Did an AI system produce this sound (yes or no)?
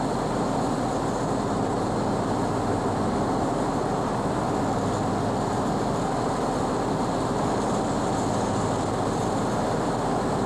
no